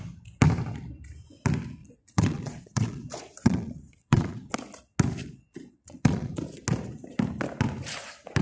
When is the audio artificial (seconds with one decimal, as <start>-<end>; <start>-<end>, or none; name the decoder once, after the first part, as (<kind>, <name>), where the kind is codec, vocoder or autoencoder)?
1.8-4.5 (vocoder, Vocos); 5.2-6.3